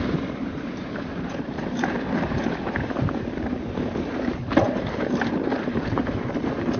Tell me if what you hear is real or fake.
fake